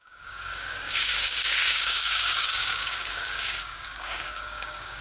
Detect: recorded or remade remade